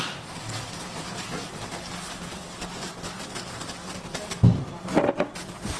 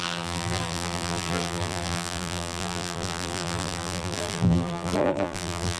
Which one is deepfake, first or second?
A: second